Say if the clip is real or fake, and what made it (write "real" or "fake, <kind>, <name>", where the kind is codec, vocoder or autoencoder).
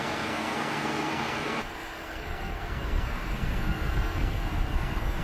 fake, codec, SNAC